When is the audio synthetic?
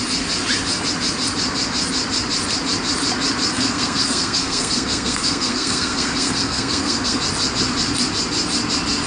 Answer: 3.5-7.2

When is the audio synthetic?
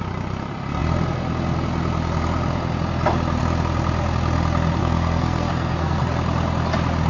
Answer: 4.8-6.0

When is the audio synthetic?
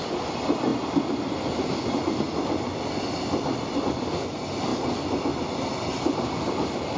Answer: none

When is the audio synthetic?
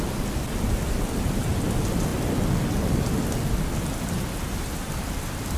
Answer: none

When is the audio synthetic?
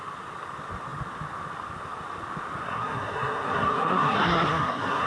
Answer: 2.6-5.1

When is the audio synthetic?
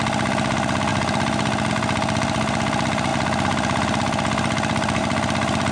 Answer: none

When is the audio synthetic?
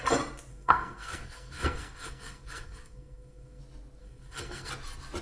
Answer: 0.5-3.6; 4.0-4.7